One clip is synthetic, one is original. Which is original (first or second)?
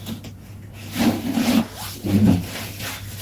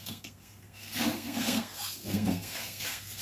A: first